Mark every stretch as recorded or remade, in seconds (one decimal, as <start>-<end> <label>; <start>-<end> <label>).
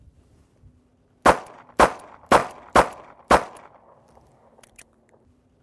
0.0-0.9 remade; 0.9-1.6 recorded; 1.6-5.6 remade